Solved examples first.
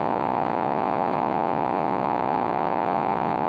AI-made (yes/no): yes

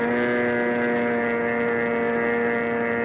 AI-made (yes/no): no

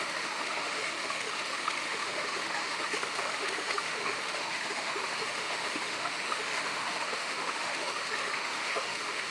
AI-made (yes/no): yes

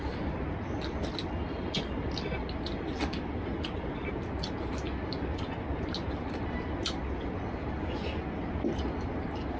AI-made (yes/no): no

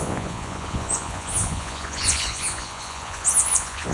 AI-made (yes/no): yes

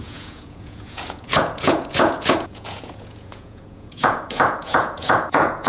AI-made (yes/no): yes